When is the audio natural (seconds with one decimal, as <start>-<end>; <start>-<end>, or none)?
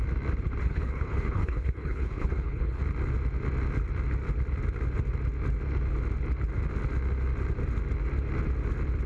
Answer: 0.0-0.6; 2.8-9.1